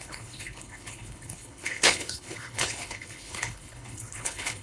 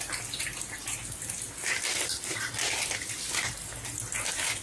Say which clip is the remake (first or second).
first